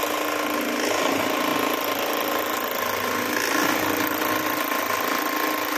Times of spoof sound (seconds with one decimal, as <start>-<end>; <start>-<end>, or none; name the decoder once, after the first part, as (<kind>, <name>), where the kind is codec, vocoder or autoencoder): none